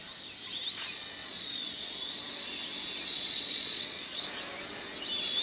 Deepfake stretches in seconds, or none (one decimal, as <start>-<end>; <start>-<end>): 1.2-2.0; 3.1-4.2